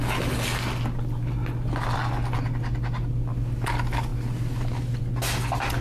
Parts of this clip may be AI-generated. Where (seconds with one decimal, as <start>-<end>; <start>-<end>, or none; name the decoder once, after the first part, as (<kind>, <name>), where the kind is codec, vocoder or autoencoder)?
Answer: none